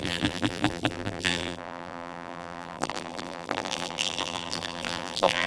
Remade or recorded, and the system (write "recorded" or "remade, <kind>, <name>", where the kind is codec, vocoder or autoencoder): remade, vocoder, BigVGAN v2